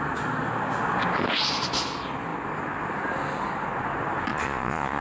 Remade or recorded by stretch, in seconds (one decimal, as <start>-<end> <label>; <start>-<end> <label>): 0.0-4.3 recorded; 4.3-5.0 remade